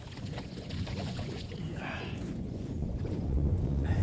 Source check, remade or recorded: remade